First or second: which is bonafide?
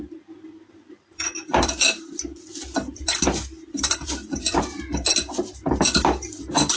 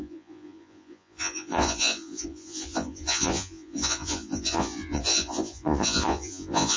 first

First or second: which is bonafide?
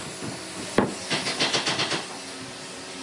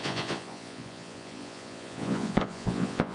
first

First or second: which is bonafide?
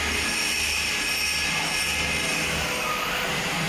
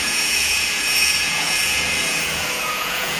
first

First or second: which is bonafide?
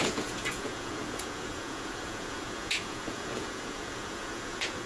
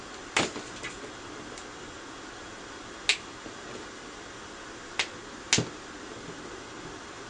second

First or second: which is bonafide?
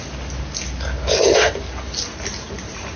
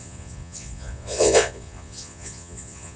first